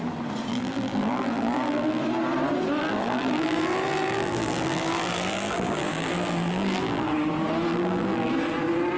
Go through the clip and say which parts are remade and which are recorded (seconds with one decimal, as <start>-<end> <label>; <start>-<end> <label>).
0.0-0.5 recorded; 0.5-2.0 remade; 2.0-2.8 recorded; 2.8-7.1 remade; 7.1-7.7 recorded; 7.7-8.3 remade; 8.3-9.0 recorded

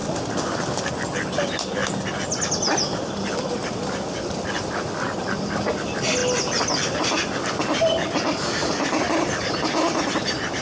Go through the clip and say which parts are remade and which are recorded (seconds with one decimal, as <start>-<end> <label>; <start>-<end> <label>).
0.0-1.1 recorded; 1.1-1.8 remade; 1.8-2.8 recorded; 2.8-6.2 remade; 6.2-7.0 recorded; 7.0-10.6 remade

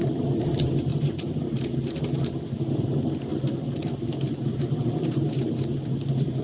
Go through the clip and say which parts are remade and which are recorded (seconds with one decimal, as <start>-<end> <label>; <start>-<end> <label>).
0.0-0.9 remade; 0.9-2.2 recorded; 2.2-6.4 remade

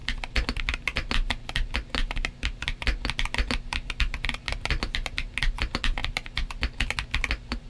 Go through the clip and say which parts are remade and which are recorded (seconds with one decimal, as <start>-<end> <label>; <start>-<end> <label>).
0.0-7.7 recorded

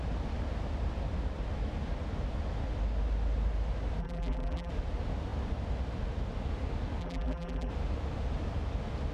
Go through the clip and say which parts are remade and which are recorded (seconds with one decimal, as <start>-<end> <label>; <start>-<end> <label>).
0.0-4.0 recorded; 4.0-4.7 remade; 4.7-7.0 recorded; 7.0-7.7 remade; 7.7-9.1 recorded

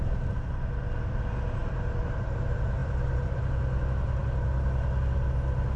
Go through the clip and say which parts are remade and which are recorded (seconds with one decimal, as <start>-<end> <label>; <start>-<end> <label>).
0.0-2.8 recorded; 2.8-3.4 remade; 3.4-5.8 recorded

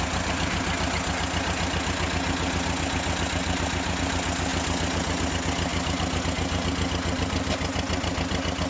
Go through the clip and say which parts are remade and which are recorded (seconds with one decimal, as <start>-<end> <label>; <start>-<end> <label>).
0.0-8.7 recorded